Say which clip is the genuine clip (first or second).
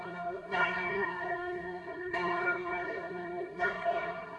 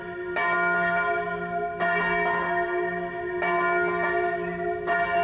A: second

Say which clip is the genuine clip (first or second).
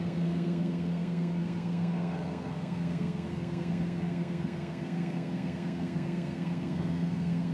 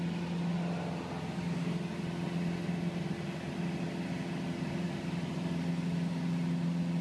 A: second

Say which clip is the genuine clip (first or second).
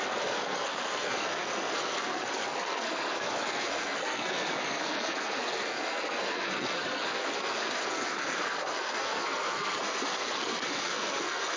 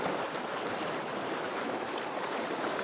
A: second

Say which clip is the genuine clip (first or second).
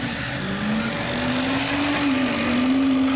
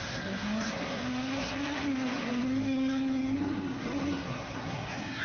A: first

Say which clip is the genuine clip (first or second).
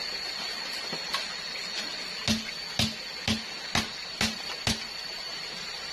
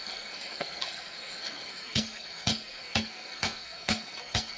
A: first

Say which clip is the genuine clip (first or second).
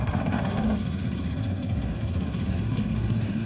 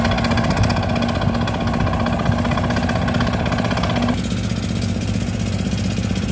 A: second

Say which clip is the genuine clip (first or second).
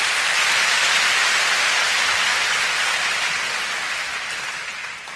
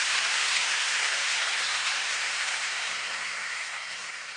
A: first